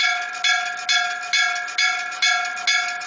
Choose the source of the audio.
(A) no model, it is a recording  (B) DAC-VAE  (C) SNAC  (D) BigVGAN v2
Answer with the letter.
A